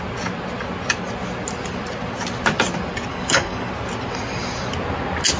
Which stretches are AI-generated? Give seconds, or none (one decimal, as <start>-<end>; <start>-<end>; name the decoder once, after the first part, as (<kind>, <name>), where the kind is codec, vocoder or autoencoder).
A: 3.1-3.7 (codec, DAC)

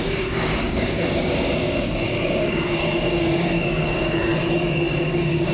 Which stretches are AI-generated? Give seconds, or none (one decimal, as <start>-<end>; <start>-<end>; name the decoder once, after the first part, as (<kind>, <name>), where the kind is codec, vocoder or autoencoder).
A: 0.0-4.3 (codec, DAC); 5.0-5.5

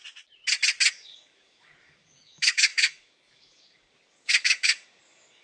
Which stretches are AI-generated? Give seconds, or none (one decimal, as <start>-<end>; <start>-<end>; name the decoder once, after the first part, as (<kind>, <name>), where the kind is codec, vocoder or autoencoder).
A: 0.9-5.4 (codec, DAC)

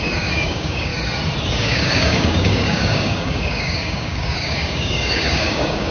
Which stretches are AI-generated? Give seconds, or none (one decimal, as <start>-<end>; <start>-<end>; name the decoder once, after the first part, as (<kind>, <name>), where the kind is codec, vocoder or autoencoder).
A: 0.0-0.9 (codec, DAC); 1.5-5.9

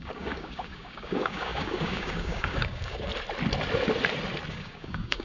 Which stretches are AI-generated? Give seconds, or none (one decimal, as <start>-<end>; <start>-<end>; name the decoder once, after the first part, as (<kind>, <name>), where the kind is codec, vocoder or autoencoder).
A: 0.0-3.1 (codec, DAC); 4.5-5.2

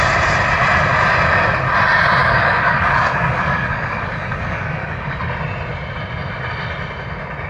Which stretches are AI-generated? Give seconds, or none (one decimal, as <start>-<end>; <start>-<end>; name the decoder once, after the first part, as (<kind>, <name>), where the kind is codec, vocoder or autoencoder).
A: 2.2-5.2 (codec, DAC)